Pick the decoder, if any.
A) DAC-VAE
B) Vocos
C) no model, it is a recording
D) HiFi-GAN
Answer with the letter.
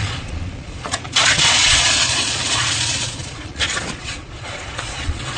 B